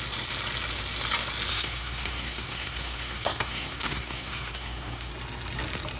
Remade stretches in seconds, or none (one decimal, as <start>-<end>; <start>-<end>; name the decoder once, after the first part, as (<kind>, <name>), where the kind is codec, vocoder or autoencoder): 1.5-5.1 (codec, SNAC)